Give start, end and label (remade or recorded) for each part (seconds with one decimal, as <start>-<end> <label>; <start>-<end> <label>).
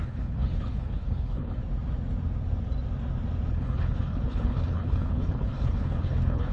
0.0-1.6 remade; 1.6-3.5 recorded; 3.5-6.5 remade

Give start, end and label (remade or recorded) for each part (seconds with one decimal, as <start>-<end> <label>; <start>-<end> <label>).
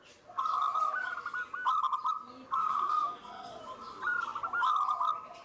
0.0-2.6 recorded; 2.6-3.6 remade; 3.6-5.4 recorded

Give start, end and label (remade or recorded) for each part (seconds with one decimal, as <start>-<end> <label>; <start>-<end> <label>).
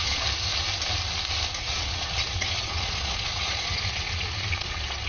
0.0-1.6 recorded; 1.6-5.1 remade